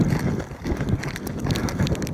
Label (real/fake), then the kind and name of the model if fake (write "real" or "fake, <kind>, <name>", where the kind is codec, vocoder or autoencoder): real